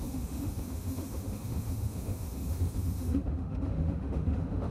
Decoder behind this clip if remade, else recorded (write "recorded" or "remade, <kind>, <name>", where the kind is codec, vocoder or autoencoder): remade, autoencoder, DAC-VAE